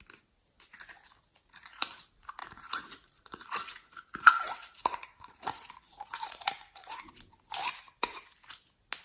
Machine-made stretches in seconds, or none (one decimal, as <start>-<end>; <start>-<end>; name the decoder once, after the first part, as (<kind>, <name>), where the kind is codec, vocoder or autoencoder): 1.3-2.0 (vocoder, Vocos); 2.4-7.1